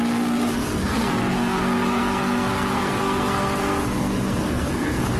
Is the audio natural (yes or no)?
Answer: no